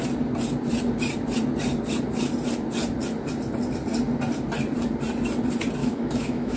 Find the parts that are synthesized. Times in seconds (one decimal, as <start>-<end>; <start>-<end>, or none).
5.8-6.6